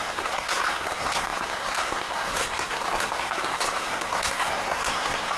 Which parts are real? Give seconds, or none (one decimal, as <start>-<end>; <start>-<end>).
none

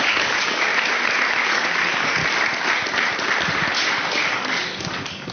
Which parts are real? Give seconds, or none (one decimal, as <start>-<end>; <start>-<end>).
0.7-1.3; 2.2-3.5

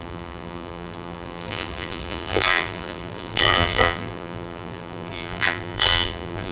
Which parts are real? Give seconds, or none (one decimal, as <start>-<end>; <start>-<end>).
none